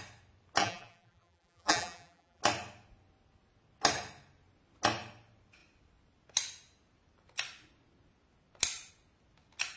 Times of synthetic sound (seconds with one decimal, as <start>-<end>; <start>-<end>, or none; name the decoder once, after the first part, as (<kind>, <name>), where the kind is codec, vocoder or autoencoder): 0.6-2.4 (vocoder, BigVGAN v2)